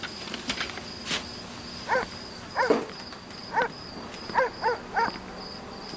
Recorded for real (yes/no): yes